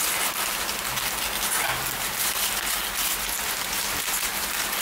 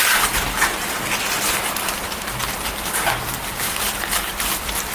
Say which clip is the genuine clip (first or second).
first